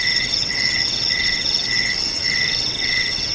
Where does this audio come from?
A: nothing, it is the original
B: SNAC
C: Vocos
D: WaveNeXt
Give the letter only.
D